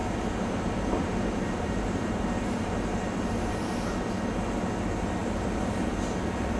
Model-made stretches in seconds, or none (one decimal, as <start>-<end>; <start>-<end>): 0.0-4.0; 5.2-5.7